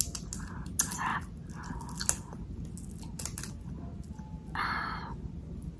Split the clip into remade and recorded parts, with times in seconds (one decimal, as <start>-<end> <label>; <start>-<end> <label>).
0.0-5.8 recorded